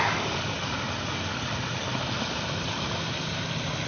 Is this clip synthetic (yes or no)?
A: no